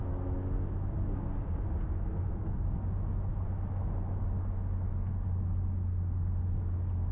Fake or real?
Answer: real